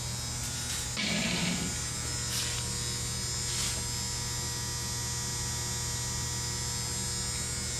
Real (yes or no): yes